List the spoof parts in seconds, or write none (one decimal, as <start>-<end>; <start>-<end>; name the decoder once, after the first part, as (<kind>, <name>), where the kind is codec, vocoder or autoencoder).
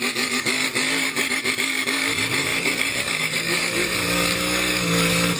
0.0-5.4 (codec, DAC)